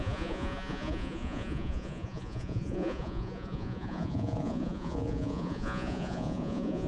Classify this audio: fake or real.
fake